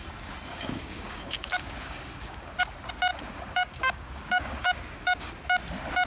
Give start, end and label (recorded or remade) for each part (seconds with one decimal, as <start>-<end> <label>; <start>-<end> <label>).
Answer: 0.0-0.5 recorded; 0.5-2.6 remade; 2.6-3.1 recorded; 3.1-5.3 remade; 5.3-6.1 recorded

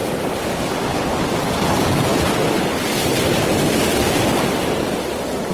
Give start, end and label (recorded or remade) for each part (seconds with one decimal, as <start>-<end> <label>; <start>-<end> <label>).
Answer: 0.0-0.8 remade; 0.8-2.1 recorded; 2.1-5.5 remade

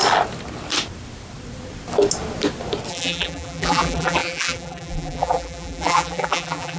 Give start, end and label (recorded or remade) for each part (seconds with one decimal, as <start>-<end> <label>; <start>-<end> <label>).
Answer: 0.0-2.9 recorded; 2.9-6.8 remade

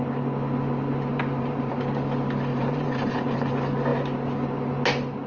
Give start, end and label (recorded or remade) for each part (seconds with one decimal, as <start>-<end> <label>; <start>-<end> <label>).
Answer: 0.0-1.1 recorded; 1.1-1.7 remade; 1.7-2.5 recorded; 2.5-3.5 remade; 3.5-5.3 recorded

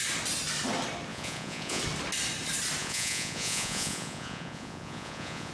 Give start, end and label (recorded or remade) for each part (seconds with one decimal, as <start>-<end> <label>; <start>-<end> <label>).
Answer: 0.0-1.1 recorded; 1.1-1.8 remade; 1.8-2.8 recorded; 2.8-5.5 remade

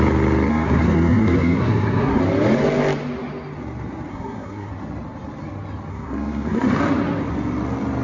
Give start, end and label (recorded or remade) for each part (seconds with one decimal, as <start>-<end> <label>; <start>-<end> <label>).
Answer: 0.0-0.5 recorded; 0.5-2.2 remade; 2.2-4.1 recorded; 4.1-4.7 remade; 4.7-5.9 recorded; 5.9-6.8 remade; 6.8-8.0 recorded